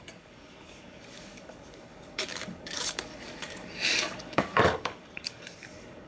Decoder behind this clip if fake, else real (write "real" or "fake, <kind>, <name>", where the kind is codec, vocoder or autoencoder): fake, codec, DAC